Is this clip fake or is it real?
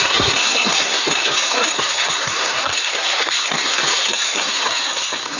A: fake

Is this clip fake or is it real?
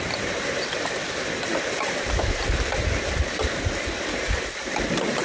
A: real